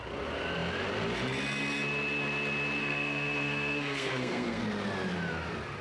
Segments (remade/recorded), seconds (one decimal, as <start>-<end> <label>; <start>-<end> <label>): 0.0-2.8 recorded; 2.8-4.6 remade; 4.6-5.8 recorded